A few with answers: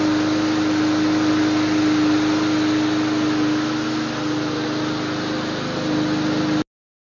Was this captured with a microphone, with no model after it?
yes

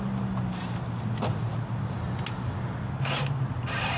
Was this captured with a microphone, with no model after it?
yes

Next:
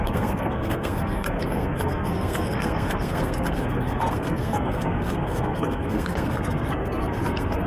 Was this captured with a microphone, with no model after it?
no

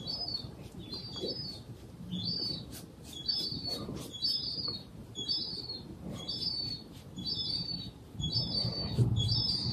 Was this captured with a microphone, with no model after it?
no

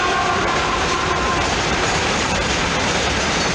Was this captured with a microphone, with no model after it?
no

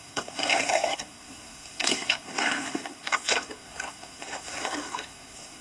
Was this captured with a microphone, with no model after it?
no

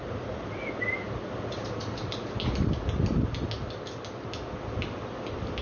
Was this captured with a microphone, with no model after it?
yes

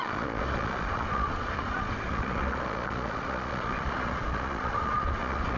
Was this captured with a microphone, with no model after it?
no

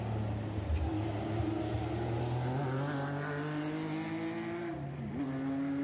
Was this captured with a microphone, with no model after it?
yes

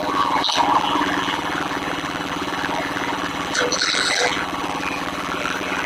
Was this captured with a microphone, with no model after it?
no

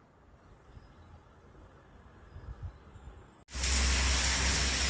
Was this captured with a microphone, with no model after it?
yes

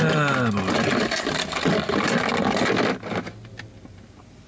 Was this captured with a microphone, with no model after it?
yes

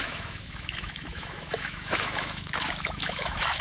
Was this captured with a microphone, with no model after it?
no